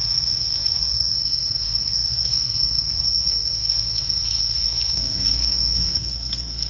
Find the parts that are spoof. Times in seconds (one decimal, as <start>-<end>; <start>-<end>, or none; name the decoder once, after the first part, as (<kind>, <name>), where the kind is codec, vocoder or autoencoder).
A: 0.0-6.7 (codec, SNAC)